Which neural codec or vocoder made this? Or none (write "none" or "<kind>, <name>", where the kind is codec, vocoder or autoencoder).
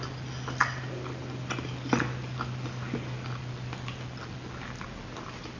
none